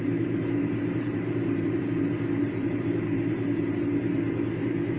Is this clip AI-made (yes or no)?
yes